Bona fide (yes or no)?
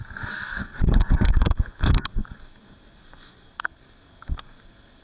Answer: no